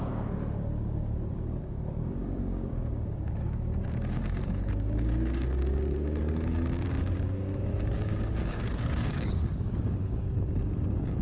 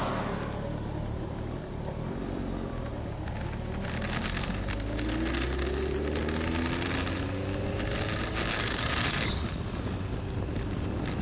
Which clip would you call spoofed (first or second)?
first